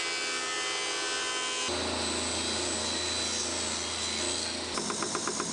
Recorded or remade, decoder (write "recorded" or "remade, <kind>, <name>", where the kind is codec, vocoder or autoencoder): recorded